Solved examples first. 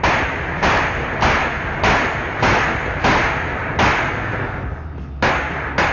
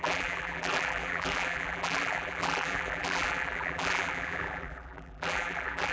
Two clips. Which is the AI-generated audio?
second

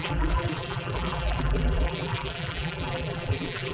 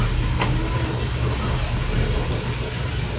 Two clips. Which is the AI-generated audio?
first